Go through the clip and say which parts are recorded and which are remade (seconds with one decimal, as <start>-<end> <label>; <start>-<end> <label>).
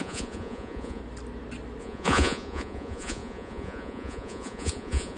0.0-1.0 remade; 1.0-1.8 recorded; 1.8-5.2 remade